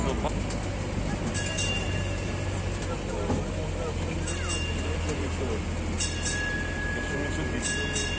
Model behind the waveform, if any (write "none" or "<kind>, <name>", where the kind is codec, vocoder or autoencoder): none